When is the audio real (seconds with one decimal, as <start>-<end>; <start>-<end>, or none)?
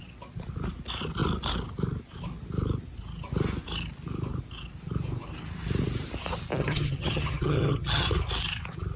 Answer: 0.0-6.6; 8.1-9.0